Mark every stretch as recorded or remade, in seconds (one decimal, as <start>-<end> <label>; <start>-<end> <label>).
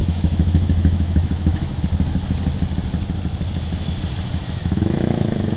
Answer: 0.0-1.8 remade; 1.8-4.6 recorded; 4.6-5.6 remade